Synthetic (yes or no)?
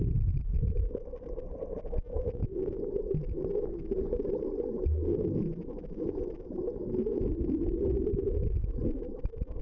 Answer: no